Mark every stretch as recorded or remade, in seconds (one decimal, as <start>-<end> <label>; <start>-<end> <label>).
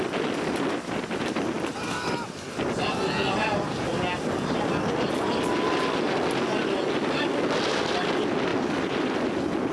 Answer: 0.0-8.5 recorded; 8.5-9.1 remade; 9.1-9.7 recorded